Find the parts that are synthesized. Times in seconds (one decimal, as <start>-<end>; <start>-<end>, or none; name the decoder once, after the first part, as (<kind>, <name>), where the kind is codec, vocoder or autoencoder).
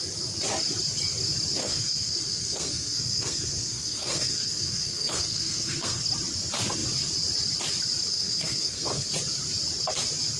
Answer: 1.6-6.0 (codec, SNAC); 8.1-9.1